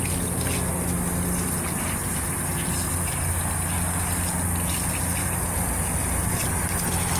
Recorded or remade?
recorded